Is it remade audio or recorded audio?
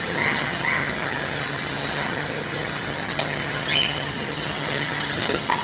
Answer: remade